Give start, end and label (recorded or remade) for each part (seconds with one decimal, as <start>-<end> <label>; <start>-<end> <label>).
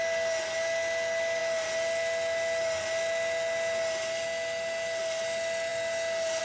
0.0-6.4 recorded